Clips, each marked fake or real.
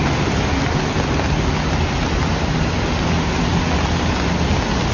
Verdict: real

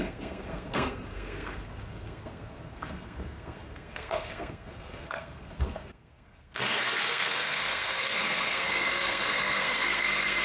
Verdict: fake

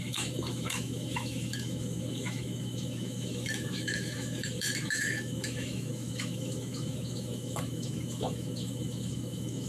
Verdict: fake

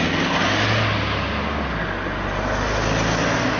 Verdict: real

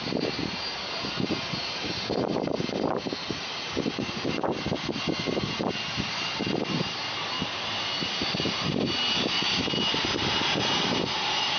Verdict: fake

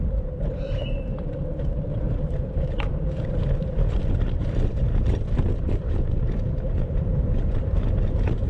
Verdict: fake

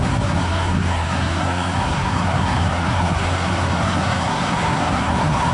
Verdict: fake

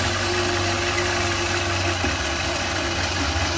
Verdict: real